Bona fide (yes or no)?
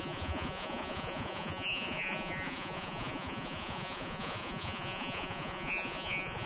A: no